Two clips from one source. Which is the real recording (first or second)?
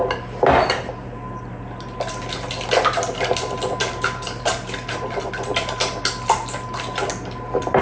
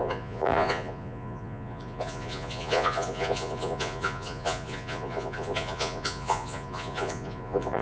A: first